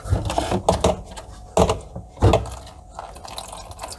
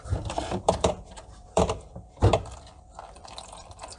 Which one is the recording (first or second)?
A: first